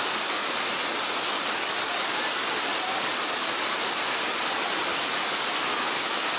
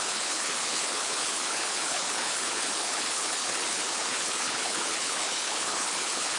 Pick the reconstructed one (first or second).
second